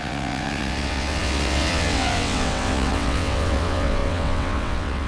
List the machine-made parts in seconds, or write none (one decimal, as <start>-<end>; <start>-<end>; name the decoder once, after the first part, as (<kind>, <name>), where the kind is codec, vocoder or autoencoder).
0.0-5.1 (vocoder, WaveNeXt)